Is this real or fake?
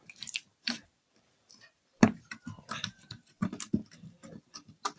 fake